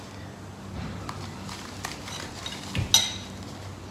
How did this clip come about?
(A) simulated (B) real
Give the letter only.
B